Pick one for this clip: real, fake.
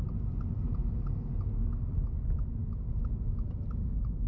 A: real